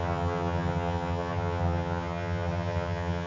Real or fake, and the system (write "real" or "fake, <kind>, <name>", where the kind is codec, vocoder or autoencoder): fake, vocoder, HiFi-GAN